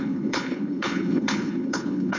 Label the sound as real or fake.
fake